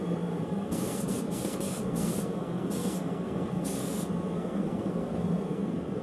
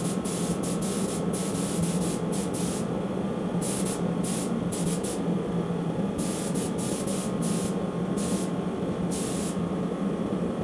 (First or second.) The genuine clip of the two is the second